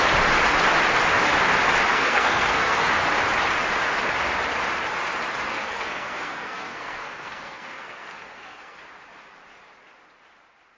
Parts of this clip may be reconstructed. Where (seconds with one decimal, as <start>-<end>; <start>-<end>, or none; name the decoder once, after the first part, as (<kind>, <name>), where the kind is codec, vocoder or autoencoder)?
1.9-2.9 (codec, SNAC); 5.5-8.8